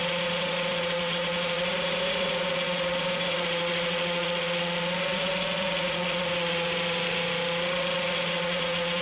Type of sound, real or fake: fake